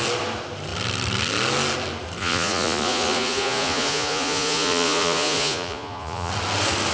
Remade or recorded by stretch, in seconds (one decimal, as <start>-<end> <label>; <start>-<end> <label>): 0.0-2.2 recorded; 2.2-6.3 remade; 6.3-6.9 recorded